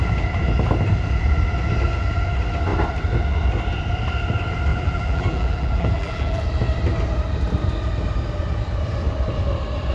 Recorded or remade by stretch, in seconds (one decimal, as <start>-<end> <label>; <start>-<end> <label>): 0.0-4.7 recorded; 4.7-6.4 remade; 6.4-9.9 recorded